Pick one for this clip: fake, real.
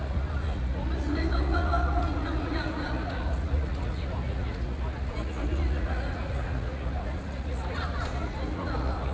fake